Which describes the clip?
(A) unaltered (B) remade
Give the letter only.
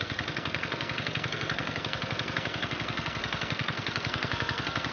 B